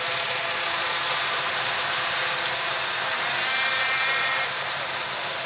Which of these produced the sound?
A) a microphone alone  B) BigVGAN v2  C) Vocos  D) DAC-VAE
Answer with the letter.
B